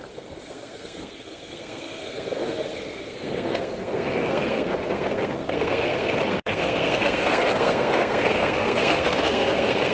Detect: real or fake fake